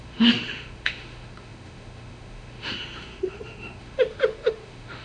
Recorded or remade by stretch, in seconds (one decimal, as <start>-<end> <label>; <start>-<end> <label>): 0.0-5.0 remade